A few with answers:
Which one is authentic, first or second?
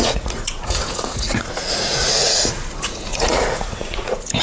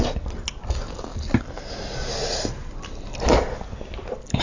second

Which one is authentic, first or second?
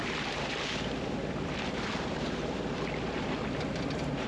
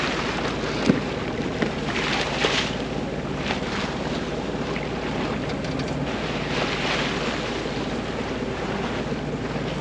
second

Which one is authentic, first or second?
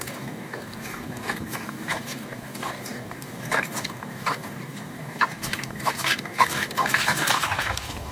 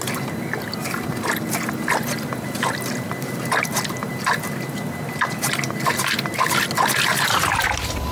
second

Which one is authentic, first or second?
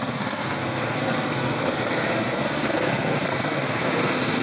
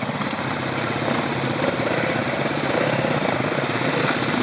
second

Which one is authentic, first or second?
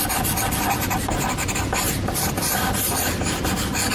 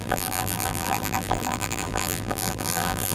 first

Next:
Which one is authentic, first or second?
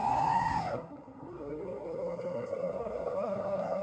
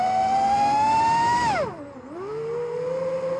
second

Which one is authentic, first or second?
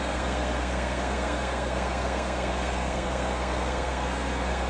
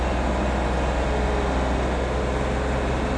second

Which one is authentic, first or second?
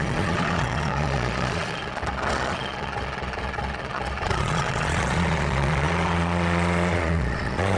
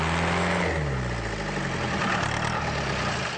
second